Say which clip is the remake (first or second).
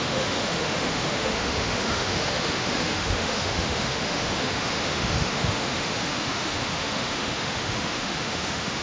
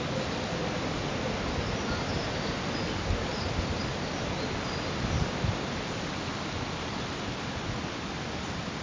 first